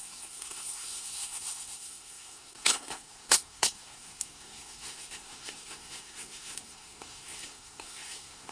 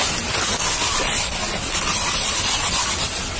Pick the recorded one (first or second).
second